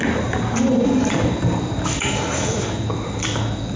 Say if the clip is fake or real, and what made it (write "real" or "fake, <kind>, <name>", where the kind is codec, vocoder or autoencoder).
real